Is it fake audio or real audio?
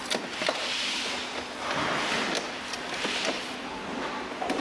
real